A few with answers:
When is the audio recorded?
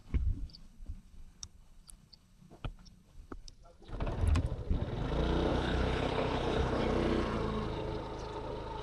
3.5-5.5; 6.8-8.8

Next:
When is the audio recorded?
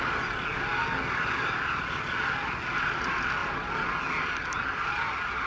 0.0-5.5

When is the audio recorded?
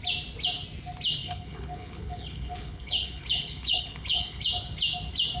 0.0-1.2; 4.4-5.4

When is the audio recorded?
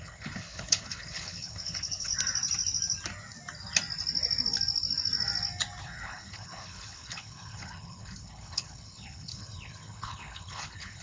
2.1-5.8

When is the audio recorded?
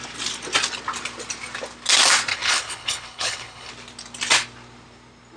0.0-2.3; 3.7-5.4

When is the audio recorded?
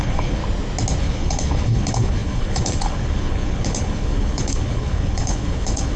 0.4-1.0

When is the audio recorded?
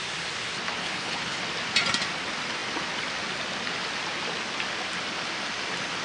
0.0-0.8; 1.4-6.0